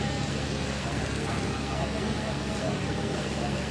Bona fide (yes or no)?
no